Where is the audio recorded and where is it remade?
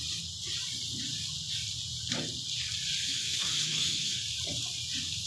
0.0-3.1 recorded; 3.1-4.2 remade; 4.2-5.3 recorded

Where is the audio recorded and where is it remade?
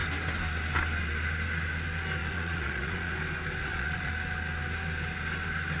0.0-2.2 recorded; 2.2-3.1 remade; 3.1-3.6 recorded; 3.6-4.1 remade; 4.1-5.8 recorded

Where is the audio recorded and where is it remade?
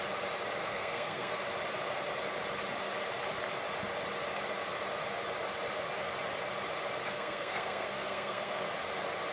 0.0-0.6 recorded; 0.6-1.4 remade; 1.4-7.0 recorded; 7.0-8.6 remade; 8.6-9.3 recorded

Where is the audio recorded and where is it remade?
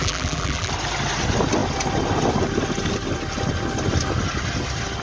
0.0-0.7 remade; 0.7-5.0 recorded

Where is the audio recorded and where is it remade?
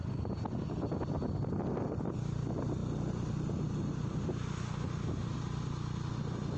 0.0-6.6 recorded